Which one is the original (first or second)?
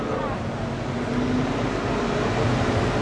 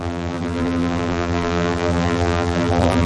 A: first